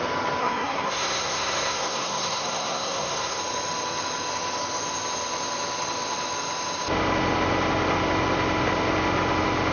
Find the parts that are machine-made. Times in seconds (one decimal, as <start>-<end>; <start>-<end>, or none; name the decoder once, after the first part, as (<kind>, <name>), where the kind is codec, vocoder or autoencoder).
0.4-3.4 (codec, SNAC)

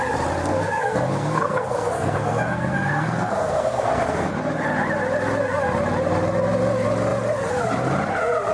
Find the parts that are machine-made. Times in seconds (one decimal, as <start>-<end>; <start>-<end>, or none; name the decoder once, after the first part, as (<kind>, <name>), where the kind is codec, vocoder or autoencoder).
0.4-4.3 (codec, SNAC)

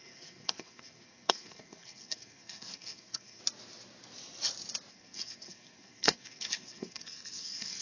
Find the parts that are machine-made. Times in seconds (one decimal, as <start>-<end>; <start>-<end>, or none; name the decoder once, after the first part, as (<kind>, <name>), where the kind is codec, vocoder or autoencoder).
0.0-3.4 (codec, SNAC); 4.9-7.8

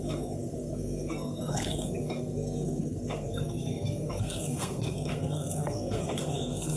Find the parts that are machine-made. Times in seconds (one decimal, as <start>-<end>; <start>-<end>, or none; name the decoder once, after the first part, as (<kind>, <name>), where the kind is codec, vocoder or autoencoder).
0.0-6.8 (codec, SNAC)

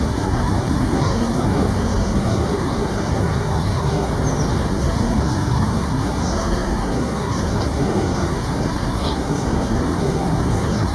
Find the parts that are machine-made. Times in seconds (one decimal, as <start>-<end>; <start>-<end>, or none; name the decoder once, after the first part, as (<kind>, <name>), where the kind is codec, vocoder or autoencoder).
0.0-4.1 (codec, SNAC); 4.7-10.9

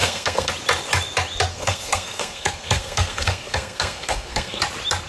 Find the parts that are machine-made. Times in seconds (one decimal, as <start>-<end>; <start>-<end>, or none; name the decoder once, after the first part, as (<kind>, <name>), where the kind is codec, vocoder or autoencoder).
0.0-0.5 (codec, SNAC); 1.5-4.6

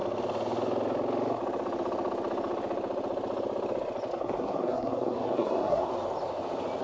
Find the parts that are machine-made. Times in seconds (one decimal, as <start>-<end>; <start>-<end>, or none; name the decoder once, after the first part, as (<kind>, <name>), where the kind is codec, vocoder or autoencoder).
4.1-5.9 (codec, SNAC)